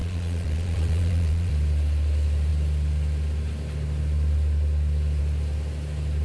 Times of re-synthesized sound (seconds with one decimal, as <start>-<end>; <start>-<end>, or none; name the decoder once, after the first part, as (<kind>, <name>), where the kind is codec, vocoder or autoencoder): 0.0-1.5 (vocoder, Vocos)